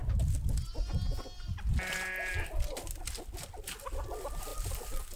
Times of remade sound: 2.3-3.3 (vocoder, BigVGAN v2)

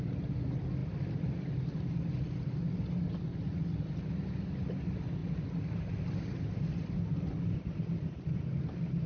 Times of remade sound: none

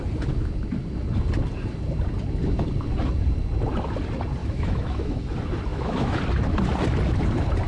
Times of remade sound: 4.4-5.2 (autoencoder, DAC-VAE); 5.7-6.2

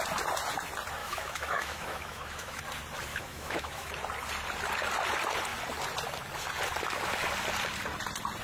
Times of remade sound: 1.0-2.6 (autoencoder, DAC-VAE); 3.1-3.9

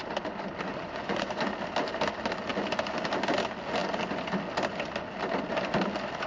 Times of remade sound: 0.7-1.4 (vocoder, Vocos)